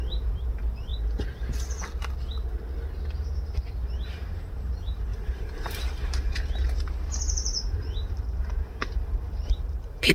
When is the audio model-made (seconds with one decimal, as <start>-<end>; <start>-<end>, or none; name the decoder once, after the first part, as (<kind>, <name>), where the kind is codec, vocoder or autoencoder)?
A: 0.0-0.9 (vocoder, BigVGAN v2); 3.7-10.1